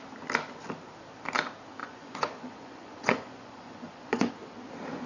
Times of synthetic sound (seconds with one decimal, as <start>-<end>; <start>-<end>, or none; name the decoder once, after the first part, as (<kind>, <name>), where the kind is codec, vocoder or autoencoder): 1.8-4.3 (vocoder, Vocos)